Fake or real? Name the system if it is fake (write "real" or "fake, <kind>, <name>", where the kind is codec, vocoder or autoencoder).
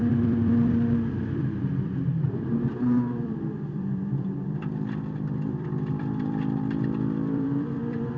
fake, vocoder, BigVGAN v2